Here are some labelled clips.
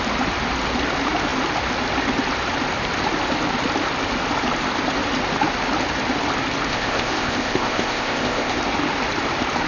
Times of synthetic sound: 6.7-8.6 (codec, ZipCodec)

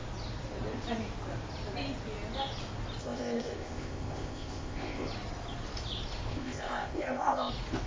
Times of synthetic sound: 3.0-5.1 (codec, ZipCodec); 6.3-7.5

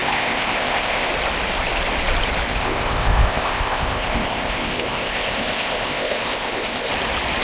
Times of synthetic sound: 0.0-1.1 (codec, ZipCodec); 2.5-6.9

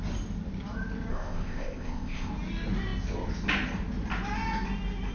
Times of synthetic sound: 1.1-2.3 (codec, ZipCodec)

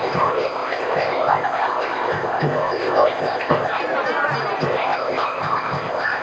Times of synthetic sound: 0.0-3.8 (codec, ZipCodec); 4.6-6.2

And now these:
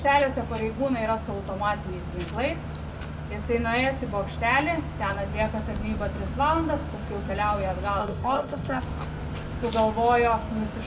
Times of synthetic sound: 8.0-8.8 (codec, ZipCodec)